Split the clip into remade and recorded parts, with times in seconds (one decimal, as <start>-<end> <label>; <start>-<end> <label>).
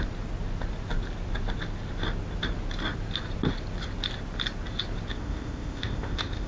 0.0-5.1 recorded; 5.1-6.5 remade